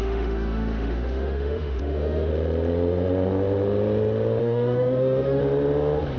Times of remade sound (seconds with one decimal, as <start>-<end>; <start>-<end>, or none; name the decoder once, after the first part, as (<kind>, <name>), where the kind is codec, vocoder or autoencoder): 0.0-2.3 (autoencoder, DAC-VAE); 4.4-5.4